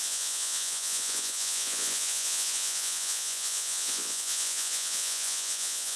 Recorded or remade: remade